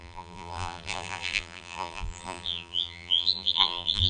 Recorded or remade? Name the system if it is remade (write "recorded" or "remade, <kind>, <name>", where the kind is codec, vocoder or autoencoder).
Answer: remade, vocoder, BigVGAN v2